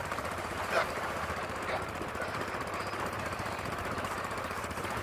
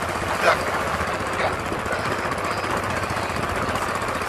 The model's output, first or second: first